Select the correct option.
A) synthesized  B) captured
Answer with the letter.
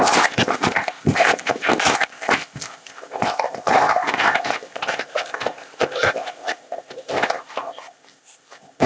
A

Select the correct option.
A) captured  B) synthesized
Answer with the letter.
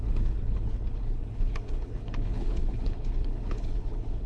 B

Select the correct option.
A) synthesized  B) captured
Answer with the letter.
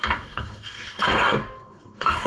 A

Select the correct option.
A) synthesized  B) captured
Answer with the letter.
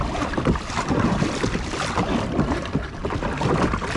B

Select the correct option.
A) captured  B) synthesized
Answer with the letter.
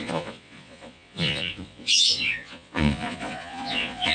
B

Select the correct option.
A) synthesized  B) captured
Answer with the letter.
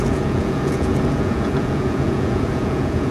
A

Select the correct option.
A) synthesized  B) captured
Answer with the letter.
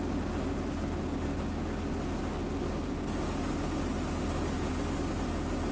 B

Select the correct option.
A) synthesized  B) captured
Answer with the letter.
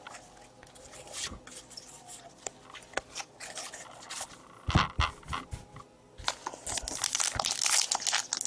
B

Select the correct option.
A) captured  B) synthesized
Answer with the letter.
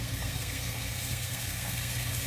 B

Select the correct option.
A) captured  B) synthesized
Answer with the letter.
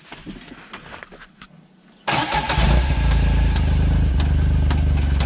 A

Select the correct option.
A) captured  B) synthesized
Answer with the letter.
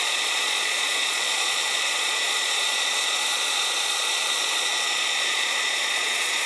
B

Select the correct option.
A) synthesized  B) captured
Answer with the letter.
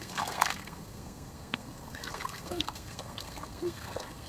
A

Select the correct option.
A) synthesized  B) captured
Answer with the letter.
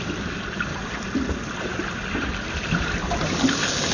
B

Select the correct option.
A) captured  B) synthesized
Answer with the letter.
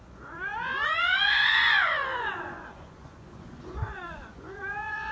B